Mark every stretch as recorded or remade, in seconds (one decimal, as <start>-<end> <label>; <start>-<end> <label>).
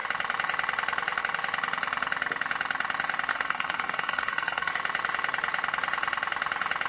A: 0.0-3.3 recorded; 3.3-4.7 remade; 4.7-6.9 recorded